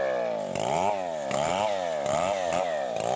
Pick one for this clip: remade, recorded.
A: recorded